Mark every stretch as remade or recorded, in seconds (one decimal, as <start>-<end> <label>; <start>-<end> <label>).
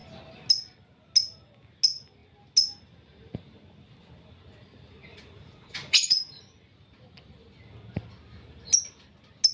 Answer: 0.0-5.1 recorded; 5.1-6.2 remade; 6.2-9.5 recorded